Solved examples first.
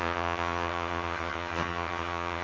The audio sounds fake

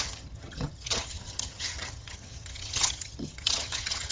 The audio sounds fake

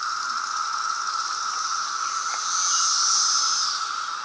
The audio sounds real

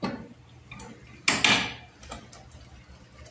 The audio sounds real